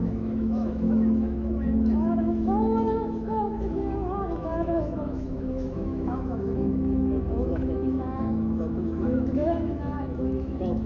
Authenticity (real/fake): fake